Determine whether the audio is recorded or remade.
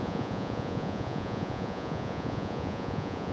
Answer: remade